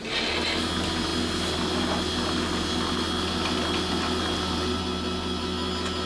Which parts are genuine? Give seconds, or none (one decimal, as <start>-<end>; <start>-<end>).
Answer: 0.0-6.1